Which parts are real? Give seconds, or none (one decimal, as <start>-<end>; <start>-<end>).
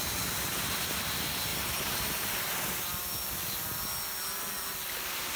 1.5-4.7